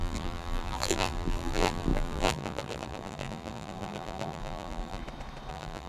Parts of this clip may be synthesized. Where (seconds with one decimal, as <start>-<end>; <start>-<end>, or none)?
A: 0.0-5.0; 5.5-5.9